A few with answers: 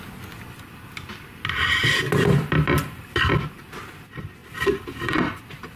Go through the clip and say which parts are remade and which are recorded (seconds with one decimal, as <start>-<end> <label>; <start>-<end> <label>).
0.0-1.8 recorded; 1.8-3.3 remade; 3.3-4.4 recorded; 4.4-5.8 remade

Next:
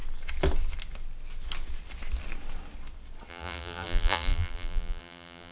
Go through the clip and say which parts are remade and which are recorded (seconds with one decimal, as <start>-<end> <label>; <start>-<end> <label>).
0.0-3.3 recorded; 3.3-5.5 remade

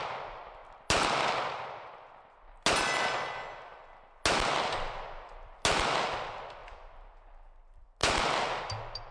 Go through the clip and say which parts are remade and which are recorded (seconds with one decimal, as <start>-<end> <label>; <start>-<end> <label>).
0.0-9.1 recorded